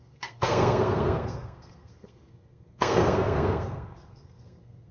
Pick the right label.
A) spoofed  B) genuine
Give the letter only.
A